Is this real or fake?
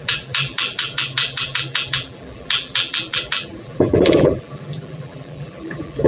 fake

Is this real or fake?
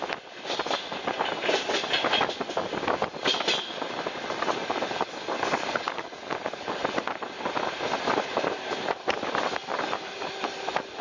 real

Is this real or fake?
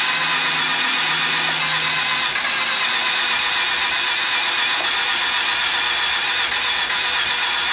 real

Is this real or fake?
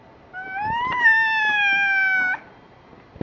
real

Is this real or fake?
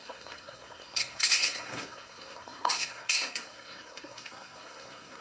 fake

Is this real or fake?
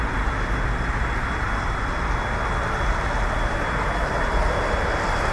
real